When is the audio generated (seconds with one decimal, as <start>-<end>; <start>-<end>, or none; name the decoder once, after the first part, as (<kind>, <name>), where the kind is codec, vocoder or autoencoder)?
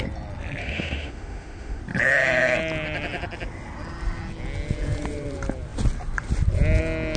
0.6-1.8 (autoencoder, DAC-VAE)